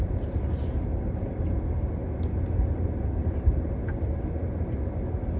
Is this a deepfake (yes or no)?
no